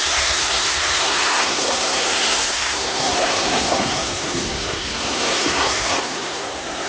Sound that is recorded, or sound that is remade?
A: remade